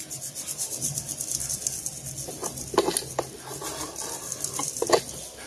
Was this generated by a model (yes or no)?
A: no